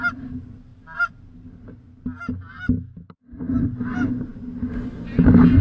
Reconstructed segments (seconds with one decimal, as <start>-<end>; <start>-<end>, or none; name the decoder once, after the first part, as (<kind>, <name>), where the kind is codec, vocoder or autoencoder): none